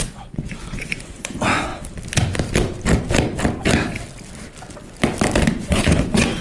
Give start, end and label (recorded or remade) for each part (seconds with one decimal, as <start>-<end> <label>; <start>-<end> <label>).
0.0-1.7 remade; 1.7-5.5 recorded; 5.5-6.4 remade